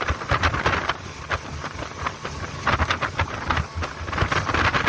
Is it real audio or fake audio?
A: real